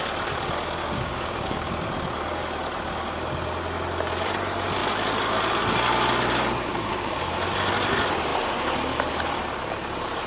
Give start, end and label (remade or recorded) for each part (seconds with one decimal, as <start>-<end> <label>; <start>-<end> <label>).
0.0-0.8 recorded; 0.8-1.7 remade; 1.7-6.7 recorded; 6.7-7.3 remade; 7.3-10.3 recorded